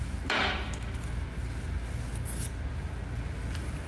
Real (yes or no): yes